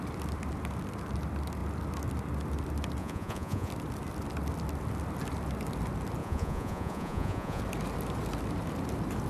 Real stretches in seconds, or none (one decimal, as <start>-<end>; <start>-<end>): 0.0-3.0; 3.7-6.2; 7.6-9.3